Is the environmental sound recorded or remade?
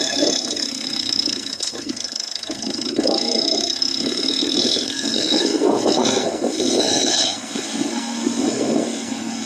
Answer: remade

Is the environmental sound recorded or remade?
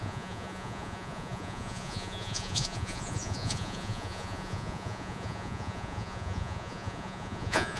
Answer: remade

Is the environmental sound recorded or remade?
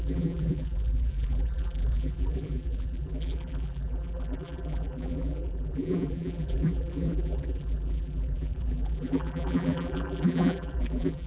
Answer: remade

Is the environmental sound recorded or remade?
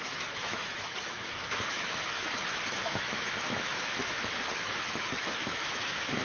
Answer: remade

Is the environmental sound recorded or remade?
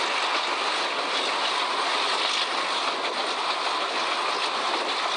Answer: recorded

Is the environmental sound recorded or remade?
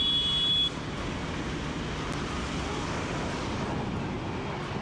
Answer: recorded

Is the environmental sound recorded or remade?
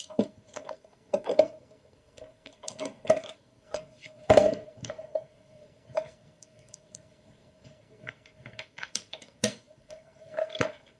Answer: remade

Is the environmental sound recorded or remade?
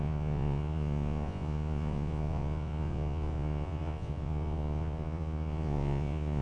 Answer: remade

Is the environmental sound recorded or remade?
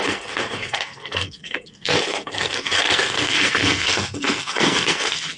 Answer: remade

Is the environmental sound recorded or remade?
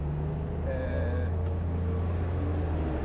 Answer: recorded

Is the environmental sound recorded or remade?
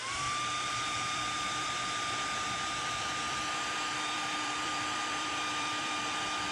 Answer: remade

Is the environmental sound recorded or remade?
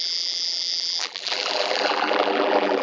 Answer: remade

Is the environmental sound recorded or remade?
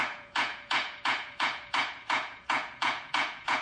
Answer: remade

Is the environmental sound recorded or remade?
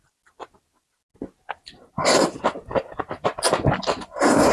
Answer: recorded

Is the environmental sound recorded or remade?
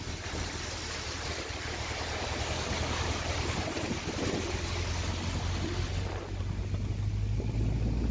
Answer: recorded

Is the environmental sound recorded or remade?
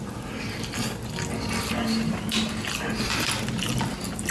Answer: recorded